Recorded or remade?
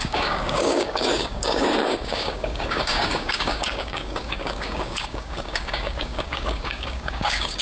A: remade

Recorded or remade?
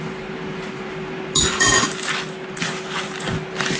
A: recorded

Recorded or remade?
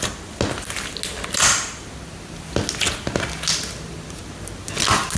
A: recorded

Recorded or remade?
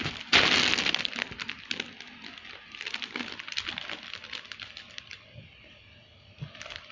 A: recorded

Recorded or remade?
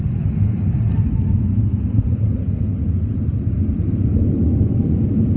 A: recorded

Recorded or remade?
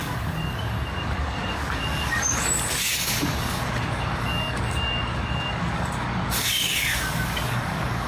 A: remade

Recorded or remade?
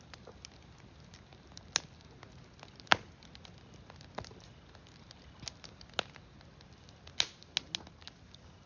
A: recorded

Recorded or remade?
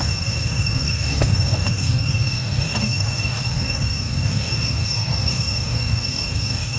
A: remade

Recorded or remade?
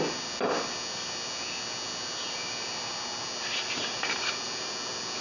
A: recorded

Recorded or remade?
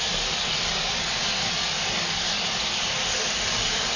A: remade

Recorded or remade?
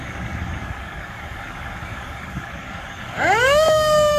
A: remade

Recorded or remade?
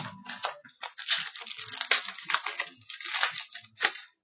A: recorded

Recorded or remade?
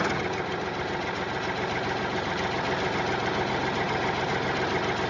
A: recorded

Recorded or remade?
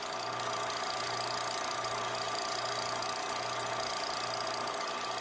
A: recorded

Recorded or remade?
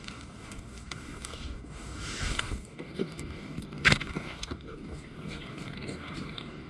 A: remade